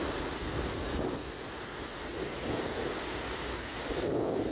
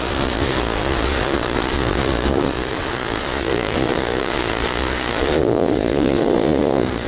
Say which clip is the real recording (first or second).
first